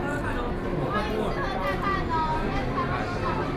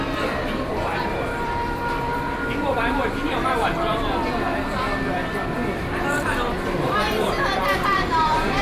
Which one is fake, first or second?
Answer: second